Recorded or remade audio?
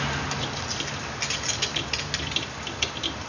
recorded